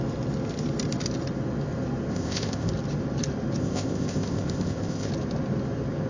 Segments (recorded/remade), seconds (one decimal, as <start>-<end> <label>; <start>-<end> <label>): 0.0-2.1 recorded; 2.1-2.7 remade; 2.7-3.6 recorded; 3.6-5.1 remade; 5.1-6.1 recorded